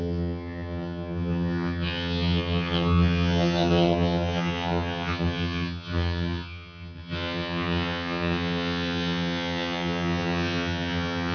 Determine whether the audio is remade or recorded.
remade